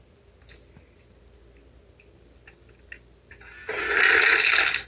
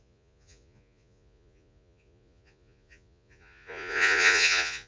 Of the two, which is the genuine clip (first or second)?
first